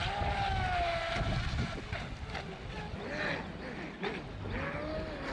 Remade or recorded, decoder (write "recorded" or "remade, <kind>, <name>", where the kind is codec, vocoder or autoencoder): recorded